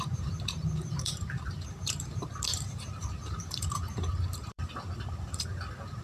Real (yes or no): no